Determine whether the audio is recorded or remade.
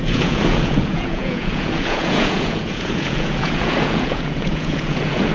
remade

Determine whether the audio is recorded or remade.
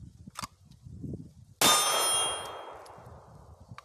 recorded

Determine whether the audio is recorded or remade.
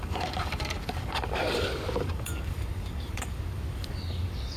remade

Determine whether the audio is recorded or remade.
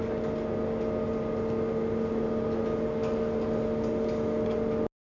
recorded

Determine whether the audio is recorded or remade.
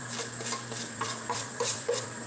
remade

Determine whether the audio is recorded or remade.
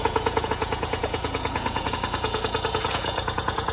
remade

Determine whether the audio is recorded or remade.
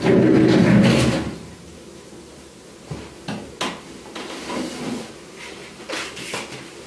recorded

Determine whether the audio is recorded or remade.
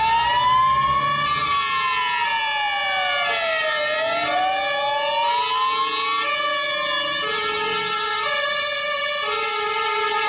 recorded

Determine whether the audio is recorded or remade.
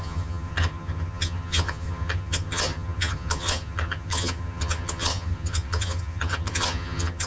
remade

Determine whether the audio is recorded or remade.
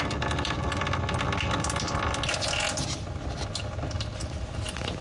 recorded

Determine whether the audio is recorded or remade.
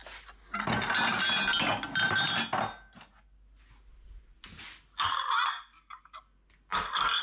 recorded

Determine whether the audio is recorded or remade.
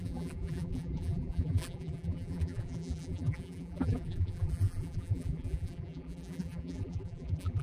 remade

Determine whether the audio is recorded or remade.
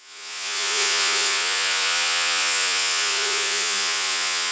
remade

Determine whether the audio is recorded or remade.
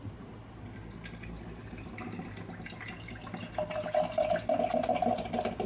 recorded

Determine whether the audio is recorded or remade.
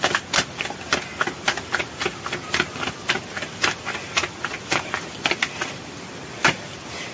recorded